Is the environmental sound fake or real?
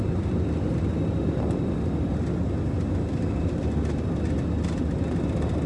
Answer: real